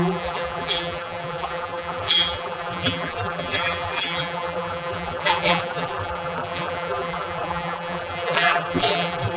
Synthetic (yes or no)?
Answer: yes